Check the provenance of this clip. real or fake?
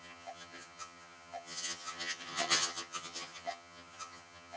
fake